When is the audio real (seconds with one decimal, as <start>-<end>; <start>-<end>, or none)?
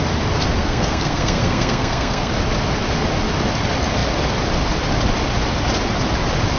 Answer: 0.0-0.4; 2.3-6.6